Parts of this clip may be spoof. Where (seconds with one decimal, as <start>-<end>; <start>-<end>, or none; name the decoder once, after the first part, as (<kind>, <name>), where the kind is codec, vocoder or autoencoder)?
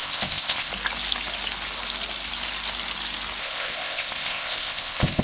0.0-0.7 (codec, ZipCodec); 3.4-5.2